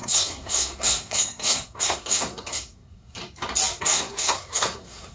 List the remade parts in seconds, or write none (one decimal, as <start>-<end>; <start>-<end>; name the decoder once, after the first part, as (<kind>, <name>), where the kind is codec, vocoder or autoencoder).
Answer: 0.0-3.2 (codec, SNAC); 3.8-5.1